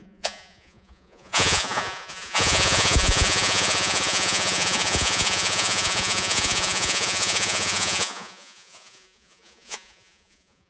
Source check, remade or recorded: remade